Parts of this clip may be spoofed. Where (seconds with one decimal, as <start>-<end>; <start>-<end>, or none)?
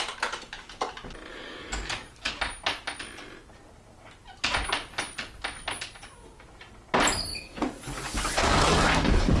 1.3-2.3; 7.3-9.4